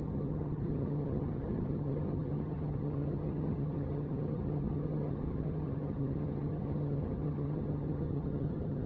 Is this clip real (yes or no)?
no